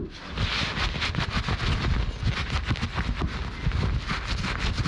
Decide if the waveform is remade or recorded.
recorded